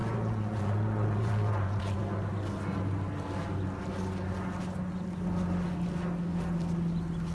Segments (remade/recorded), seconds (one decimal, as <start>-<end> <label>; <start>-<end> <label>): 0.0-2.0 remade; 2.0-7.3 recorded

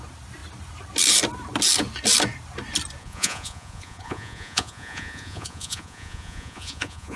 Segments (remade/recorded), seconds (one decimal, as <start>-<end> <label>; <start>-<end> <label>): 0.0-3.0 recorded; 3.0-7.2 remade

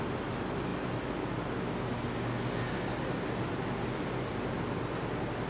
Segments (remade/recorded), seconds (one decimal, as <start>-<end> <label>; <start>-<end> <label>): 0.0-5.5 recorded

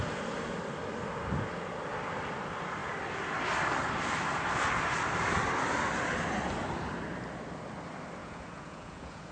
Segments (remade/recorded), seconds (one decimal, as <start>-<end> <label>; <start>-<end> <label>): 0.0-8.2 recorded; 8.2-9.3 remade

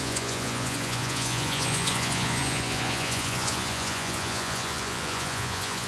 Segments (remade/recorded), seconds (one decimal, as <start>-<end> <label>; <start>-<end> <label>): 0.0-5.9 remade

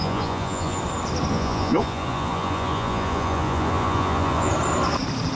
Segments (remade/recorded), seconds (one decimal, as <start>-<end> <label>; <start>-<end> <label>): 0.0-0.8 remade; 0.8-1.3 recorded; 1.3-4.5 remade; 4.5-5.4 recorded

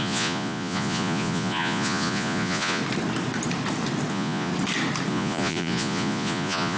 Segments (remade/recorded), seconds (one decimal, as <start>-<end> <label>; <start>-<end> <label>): 0.0-2.8 remade; 2.8-4.1 recorded; 4.1-4.5 remade; 4.5-5.1 recorded; 5.1-6.8 remade